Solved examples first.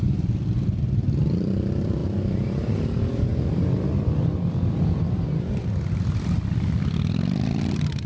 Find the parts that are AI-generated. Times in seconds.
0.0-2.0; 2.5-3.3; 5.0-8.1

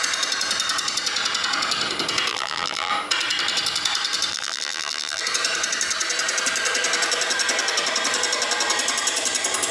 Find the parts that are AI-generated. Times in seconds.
2.3-2.9; 4.3-5.2

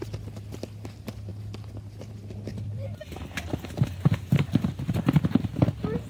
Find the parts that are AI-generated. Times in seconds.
2.5-4.4

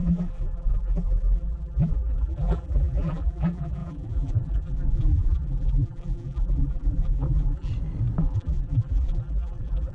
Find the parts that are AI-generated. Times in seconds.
0.0-7.7; 8.2-9.9

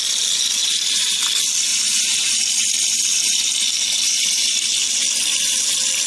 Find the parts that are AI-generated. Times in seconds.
0.6-1.2; 1.7-2.3

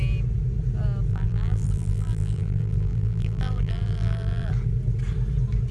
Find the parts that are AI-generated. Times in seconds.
1.1-4.5

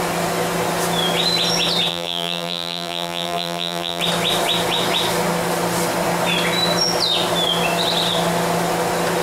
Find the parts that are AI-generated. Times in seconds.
1.9-4.0

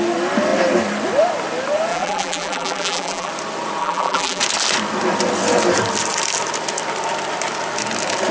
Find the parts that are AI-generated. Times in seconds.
1.9-3.3; 3.8-4.4